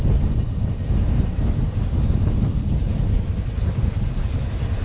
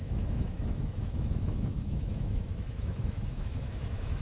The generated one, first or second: second